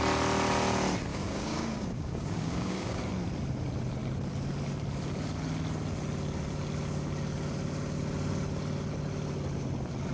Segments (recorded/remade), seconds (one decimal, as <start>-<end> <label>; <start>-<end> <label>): 0.0-1.1 recorded; 1.1-3.0 remade; 3.0-10.1 recorded